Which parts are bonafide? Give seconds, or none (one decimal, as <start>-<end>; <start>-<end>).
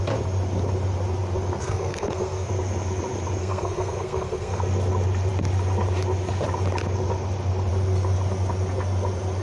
0.0-1.6; 2.5-3.4; 4.6-9.4